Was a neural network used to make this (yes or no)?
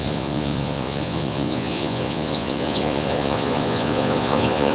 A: yes